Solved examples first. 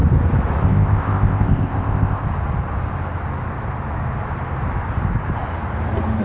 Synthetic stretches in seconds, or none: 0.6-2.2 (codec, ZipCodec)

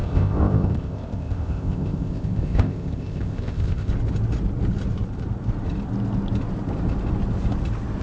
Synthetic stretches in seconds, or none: 0.0-3.9 (codec, ZipCodec)

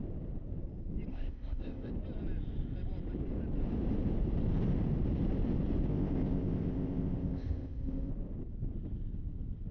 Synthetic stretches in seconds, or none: 1.1-1.9 (codec, ZipCodec); 5.9-8.1

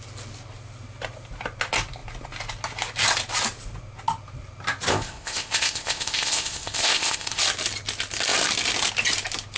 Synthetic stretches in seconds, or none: 4.9-7.4 (codec, ZipCodec)

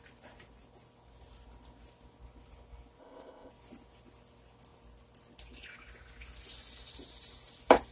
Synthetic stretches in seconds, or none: 3.0-3.5 (codec, ZipCodec)

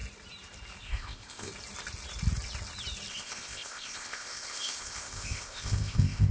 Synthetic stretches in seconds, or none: 0.8-1.5 (codec, ZipCodec); 3.1-6.3

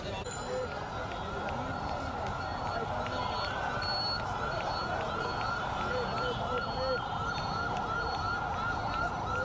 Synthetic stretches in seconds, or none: none